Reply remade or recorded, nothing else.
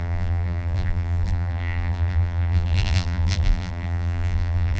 remade